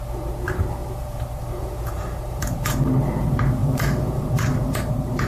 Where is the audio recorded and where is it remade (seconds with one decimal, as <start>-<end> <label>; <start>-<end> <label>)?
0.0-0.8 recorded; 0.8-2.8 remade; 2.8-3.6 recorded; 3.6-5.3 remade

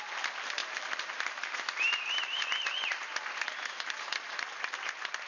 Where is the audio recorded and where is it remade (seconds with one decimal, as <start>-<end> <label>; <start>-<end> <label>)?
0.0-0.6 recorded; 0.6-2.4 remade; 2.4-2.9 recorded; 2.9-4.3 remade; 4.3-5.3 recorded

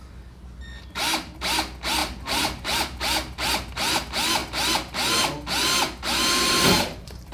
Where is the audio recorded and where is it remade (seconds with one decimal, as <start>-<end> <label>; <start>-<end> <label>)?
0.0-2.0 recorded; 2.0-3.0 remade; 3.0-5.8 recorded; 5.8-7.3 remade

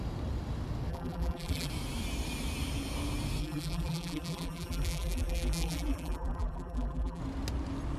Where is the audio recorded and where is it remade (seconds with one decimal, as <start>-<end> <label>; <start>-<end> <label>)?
0.0-0.9 recorded; 0.9-1.7 remade; 1.7-3.4 recorded; 3.4-7.2 remade; 7.2-8.0 recorded